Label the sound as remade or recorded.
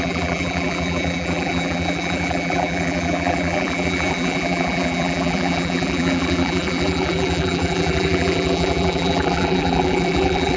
remade